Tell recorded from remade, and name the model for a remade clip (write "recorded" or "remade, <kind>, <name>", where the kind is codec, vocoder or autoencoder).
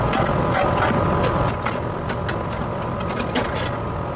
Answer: recorded